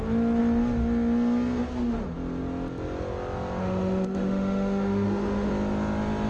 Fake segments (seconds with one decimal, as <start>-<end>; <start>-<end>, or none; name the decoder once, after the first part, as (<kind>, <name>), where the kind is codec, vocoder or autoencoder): 3.6-5.5 (autoencoder, DAC-VAE)